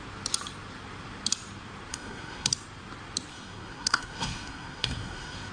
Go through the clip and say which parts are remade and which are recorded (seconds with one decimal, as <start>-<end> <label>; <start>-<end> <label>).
0.0-1.9 recorded; 1.9-2.5 remade; 2.5-3.3 recorded; 3.3-5.5 remade